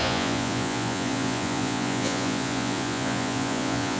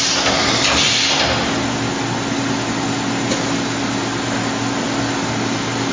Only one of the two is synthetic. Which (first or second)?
first